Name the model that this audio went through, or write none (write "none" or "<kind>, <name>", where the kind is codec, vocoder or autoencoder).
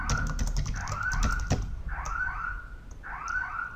none